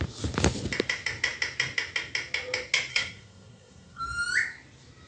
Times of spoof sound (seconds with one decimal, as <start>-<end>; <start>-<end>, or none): 2.9-4.0